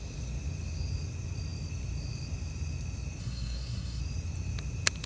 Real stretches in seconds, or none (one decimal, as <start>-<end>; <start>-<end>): 0.0-3.2; 4.0-5.1